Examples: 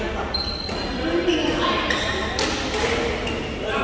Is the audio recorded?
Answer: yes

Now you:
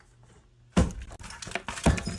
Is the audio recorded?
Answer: yes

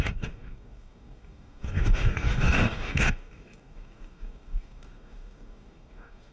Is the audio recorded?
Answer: no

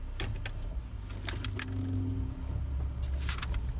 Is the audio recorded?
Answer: yes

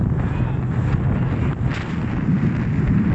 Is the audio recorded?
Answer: yes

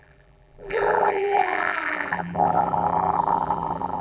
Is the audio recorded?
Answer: no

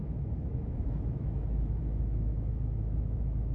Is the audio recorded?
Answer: no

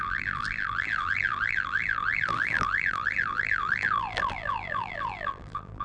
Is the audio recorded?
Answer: no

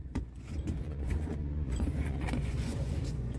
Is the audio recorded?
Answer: no